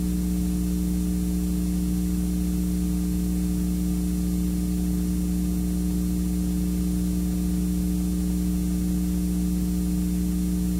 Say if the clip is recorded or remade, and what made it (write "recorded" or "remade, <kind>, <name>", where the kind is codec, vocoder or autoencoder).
recorded